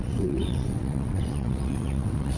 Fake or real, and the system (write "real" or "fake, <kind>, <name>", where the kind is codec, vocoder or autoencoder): fake, vocoder, WaveNeXt